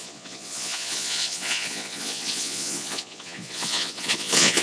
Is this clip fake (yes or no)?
yes